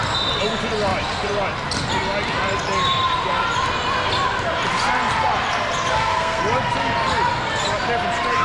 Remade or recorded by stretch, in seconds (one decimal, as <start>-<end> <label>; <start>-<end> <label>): 0.0-5.9 recorded; 5.9-6.4 remade; 6.4-8.4 recorded

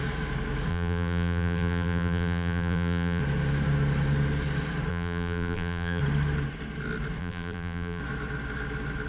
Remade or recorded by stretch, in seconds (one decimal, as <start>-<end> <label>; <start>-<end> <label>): 0.0-0.7 recorded; 0.7-3.2 remade; 3.2-4.9 recorded; 4.9-6.0 remade; 6.0-7.2 recorded; 7.2-8.0 remade; 8.0-9.1 recorded